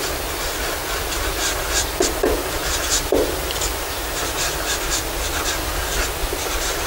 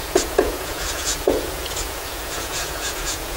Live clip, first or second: first